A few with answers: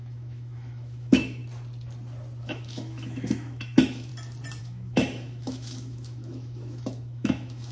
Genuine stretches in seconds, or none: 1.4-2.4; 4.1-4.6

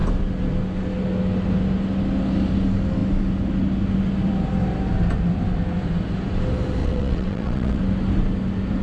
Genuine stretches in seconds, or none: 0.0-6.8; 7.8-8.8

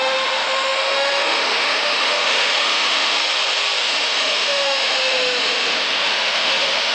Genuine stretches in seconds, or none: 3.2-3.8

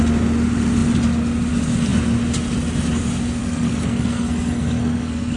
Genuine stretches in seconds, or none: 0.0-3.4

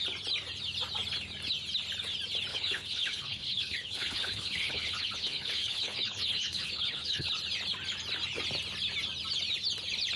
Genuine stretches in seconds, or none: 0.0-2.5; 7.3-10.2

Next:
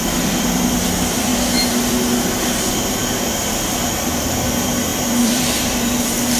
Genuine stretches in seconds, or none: 1.3-2.9; 3.4-4.1

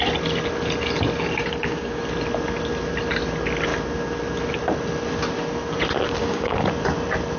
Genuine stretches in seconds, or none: 0.0-1.4; 2.0-6.2; 6.7-7.4